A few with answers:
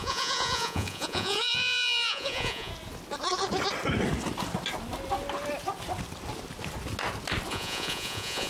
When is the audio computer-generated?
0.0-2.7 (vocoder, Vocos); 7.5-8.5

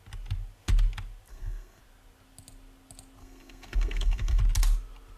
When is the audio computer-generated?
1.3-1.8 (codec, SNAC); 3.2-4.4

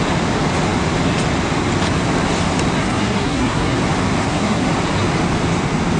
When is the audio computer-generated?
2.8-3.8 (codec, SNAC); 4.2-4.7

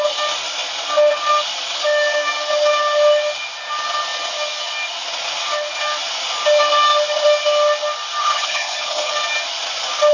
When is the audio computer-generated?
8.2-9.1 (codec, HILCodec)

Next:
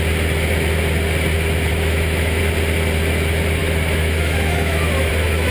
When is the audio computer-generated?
1.7-2.4 (autoencoder, DAC-VAE); 3.6-5.1

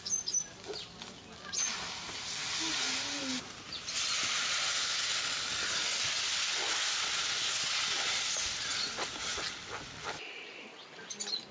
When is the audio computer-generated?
3.3-4.6 (vocoder, BigVGAN v2)